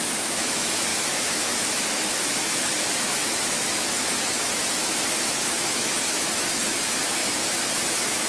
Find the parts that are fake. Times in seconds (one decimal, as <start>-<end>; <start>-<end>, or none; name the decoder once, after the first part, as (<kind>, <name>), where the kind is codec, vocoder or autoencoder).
0.0-8.3 (autoencoder, DAC-VAE)